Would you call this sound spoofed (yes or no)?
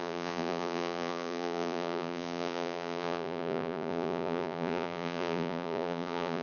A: yes